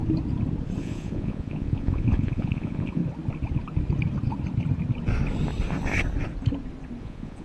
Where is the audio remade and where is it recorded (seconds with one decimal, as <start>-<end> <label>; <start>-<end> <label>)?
0.0-0.8 recorded; 0.8-3.0 remade; 3.0-7.0 recorded; 7.0-7.4 remade